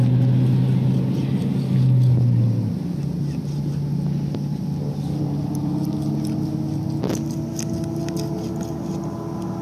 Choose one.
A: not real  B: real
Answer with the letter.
B